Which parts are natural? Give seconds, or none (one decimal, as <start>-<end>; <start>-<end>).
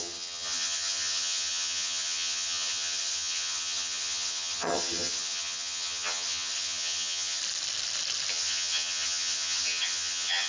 7.4-8.3